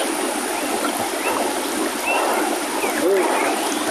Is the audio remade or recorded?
recorded